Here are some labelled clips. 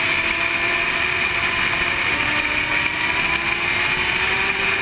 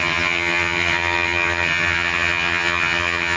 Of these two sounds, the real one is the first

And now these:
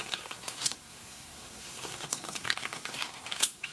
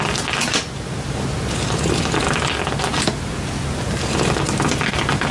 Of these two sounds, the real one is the second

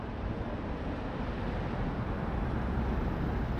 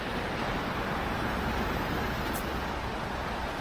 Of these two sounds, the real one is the first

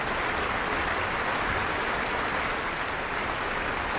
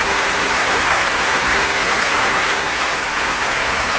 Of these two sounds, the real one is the first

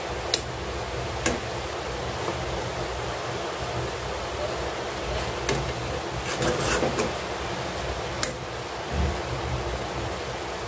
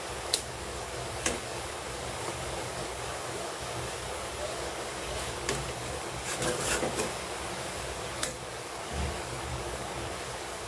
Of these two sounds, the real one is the first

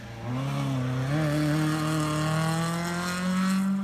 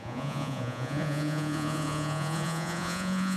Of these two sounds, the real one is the first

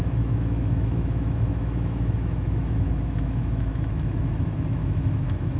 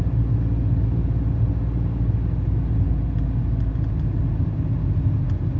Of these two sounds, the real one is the second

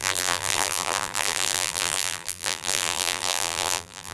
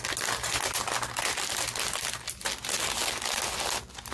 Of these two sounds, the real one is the second